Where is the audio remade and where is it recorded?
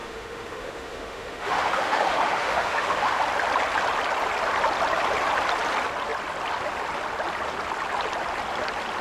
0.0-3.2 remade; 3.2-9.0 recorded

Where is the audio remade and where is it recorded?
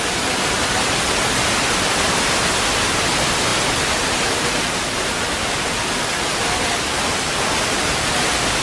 0.0-8.6 recorded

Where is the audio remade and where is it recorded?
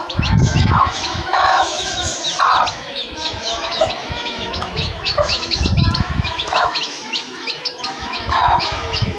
0.0-2.1 remade; 2.1-2.7 recorded; 2.7-9.2 remade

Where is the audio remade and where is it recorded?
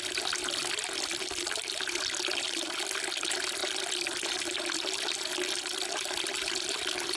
0.0-7.2 recorded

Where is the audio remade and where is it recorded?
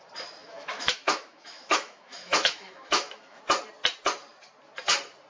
0.0-0.4 recorded; 0.4-3.4 remade; 3.4-5.3 recorded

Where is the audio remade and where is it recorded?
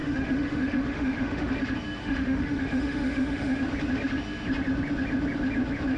0.0-1.5 remade; 1.5-2.0 recorded; 2.0-3.6 remade; 3.6-6.0 recorded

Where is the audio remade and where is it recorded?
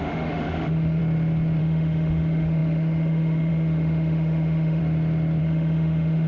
0.0-1.0 remade; 1.0-1.6 recorded; 1.6-4.8 remade; 4.8-5.4 recorded; 5.4-6.3 remade